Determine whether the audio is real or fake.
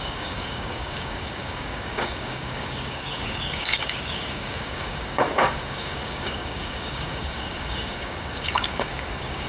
fake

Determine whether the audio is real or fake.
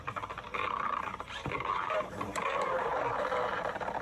fake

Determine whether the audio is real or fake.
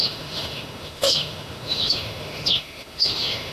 fake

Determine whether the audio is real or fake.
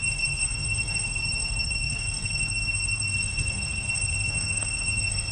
fake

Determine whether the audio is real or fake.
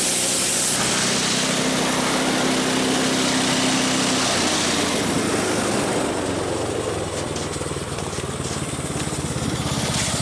real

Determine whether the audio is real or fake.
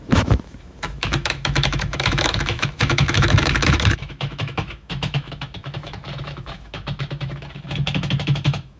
fake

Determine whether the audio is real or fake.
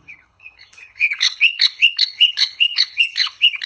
fake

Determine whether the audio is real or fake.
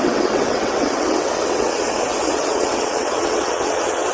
fake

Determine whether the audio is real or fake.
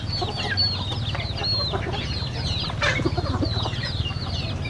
real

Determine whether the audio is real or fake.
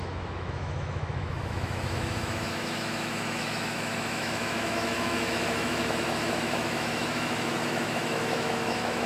fake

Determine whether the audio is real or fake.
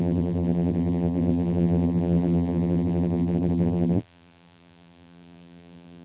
fake